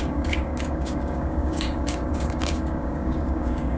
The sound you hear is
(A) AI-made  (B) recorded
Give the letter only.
A